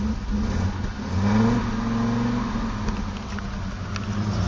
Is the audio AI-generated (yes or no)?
no